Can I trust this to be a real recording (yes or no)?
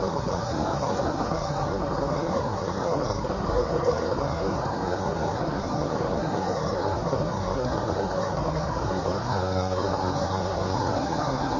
no